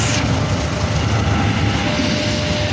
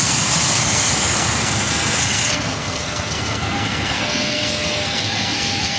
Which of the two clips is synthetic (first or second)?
second